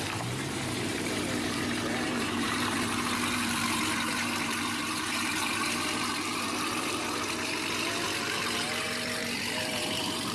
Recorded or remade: remade